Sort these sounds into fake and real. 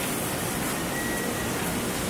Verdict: fake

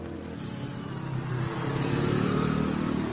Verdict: real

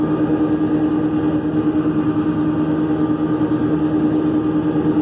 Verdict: real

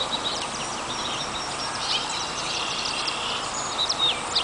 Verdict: fake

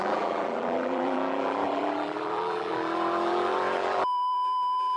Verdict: fake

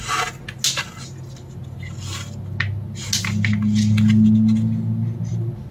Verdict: real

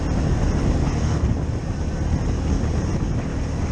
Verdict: real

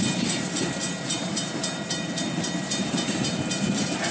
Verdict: fake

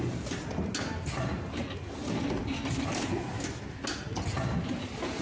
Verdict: real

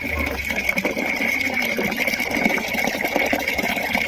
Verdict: fake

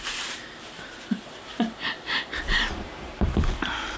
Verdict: fake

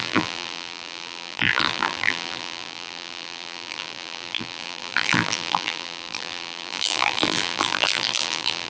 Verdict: fake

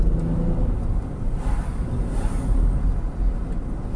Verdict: real